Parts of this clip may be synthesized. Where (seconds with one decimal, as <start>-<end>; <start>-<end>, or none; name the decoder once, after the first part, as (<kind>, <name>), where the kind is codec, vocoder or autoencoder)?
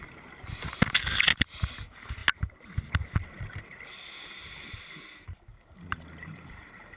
none